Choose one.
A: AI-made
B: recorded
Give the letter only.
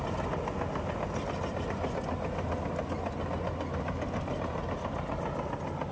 B